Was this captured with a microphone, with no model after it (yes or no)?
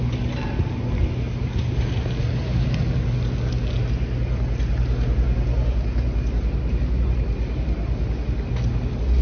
yes